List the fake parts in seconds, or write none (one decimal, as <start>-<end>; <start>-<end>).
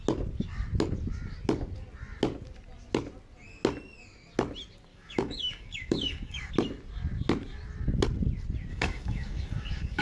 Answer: 4.9-6.5; 8.7-10.0